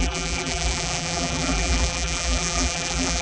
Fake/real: fake